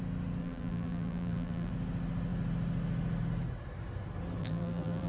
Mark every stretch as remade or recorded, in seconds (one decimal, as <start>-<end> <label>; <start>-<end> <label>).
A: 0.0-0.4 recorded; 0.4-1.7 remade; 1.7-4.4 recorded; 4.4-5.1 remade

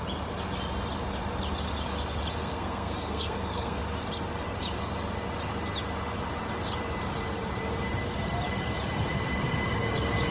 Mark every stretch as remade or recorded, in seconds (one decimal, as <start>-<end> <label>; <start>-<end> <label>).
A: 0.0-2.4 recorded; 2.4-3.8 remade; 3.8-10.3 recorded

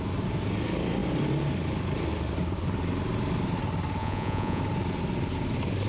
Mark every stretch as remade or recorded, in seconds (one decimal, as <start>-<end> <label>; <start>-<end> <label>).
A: 0.0-4.0 recorded; 4.0-4.6 remade; 4.6-5.9 recorded